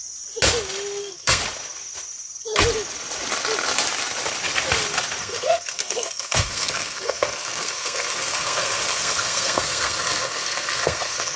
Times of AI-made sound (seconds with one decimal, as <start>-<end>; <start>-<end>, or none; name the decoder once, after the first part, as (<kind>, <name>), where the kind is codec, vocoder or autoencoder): 1.0-1.4 (codec, SNAC); 5.2-11.4